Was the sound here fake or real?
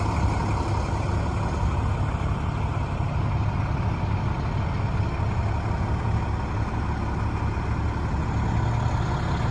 real